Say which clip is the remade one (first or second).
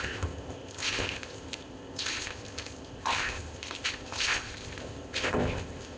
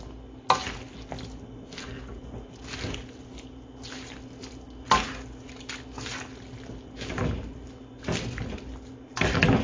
first